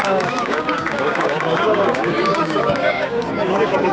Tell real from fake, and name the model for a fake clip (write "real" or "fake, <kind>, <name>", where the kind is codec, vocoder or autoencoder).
fake, codec, DAC